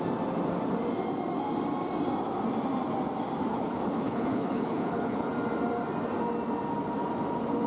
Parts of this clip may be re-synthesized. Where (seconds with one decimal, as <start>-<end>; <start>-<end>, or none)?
3.5-5.3